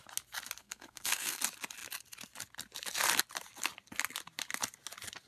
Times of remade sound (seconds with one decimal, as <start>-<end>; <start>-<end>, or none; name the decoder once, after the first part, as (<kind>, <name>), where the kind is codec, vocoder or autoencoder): 0.6-1.4 (codec, SNAC)